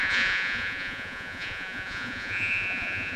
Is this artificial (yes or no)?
yes